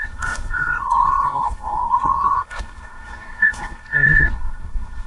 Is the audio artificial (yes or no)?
yes